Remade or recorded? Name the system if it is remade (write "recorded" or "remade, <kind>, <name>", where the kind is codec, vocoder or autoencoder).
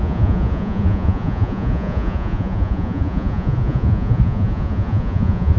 remade, vocoder, Vocos